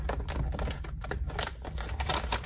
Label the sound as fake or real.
real